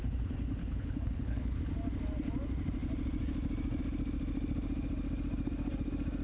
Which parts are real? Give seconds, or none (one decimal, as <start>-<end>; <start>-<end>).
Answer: 0.0-0.6; 1.6-6.2